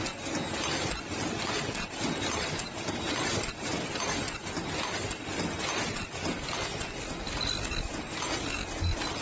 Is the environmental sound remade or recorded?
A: recorded